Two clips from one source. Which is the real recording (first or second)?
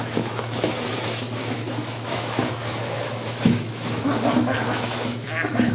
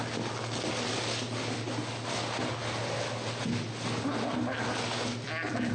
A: second